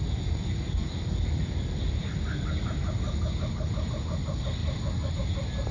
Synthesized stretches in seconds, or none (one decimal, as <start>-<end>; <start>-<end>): none